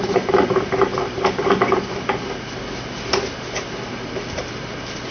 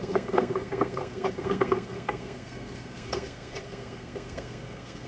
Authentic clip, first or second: first